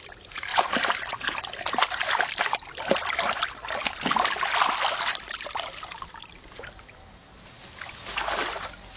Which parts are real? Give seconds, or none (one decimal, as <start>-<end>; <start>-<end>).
0.0-9.0